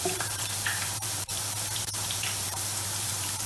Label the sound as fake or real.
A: fake